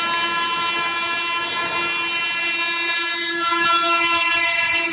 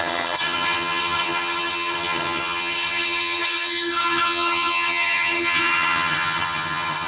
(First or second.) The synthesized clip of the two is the second